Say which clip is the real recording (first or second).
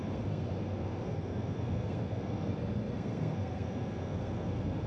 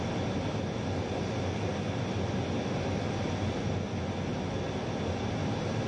second